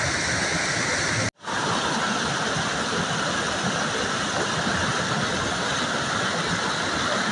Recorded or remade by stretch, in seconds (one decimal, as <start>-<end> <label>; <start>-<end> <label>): 0.0-7.3 recorded